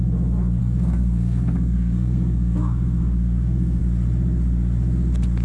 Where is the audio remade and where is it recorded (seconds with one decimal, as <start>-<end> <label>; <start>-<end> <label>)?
0.0-0.6 recorded; 0.6-3.8 remade; 3.8-5.4 recorded